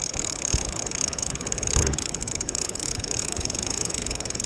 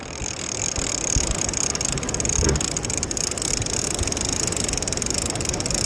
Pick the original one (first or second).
second